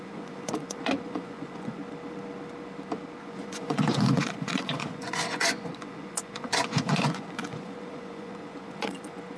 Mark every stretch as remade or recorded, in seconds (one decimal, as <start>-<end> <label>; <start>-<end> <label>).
0.0-1.8 remade; 1.8-3.2 recorded; 3.2-9.4 remade

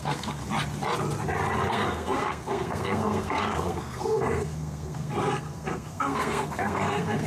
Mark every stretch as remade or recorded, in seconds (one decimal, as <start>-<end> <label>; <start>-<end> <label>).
0.0-0.4 remade; 0.4-1.7 recorded; 1.7-7.3 remade

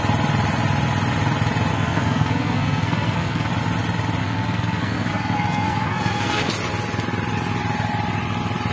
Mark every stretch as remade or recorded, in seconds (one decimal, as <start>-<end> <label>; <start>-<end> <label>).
0.0-1.7 recorded; 1.7-3.5 remade; 3.5-4.2 recorded; 4.2-6.5 remade; 6.5-8.7 recorded

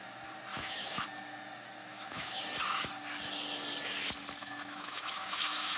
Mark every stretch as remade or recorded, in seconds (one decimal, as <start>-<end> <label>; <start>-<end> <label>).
0.0-0.5 recorded; 0.5-1.0 remade; 1.0-1.8 recorded; 1.8-2.4 remade; 2.4-4.4 recorded; 4.4-5.8 remade

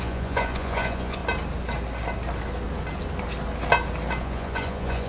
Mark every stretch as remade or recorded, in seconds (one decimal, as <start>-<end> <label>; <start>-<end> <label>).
0.0-1.2 remade; 1.2-4.2 recorded; 4.2-5.1 remade

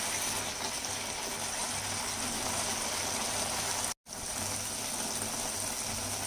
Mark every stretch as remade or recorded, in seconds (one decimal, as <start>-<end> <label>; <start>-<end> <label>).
0.0-6.3 recorded

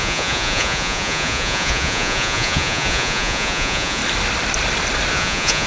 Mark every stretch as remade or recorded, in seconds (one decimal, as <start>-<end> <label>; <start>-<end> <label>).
0.0-4.0 remade; 4.0-5.1 recorded; 5.1-5.7 remade